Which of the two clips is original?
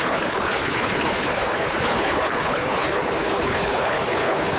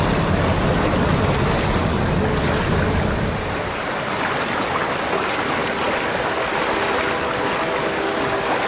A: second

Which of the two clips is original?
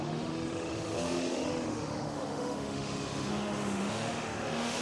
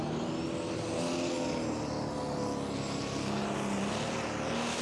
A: second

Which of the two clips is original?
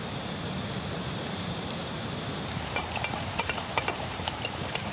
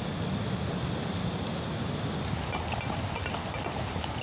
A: second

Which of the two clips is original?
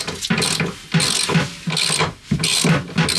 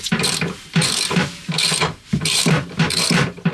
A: first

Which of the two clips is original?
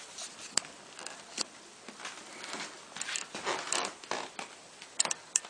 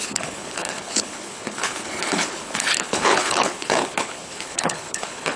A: first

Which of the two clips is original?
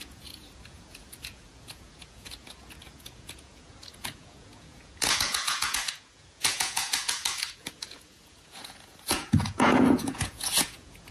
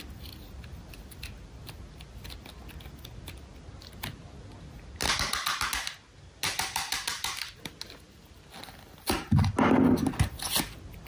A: second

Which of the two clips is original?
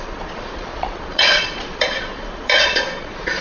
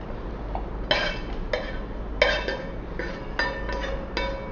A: second